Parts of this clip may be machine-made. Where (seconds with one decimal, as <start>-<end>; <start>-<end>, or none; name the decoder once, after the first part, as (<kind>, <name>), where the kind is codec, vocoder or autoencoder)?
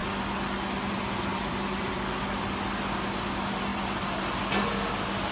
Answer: 1.3-2.6 (vocoder, BigVGAN v2); 3.7-4.2